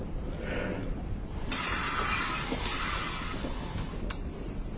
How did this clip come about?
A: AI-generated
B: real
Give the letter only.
A